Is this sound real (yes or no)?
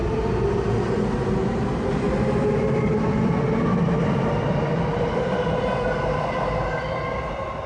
yes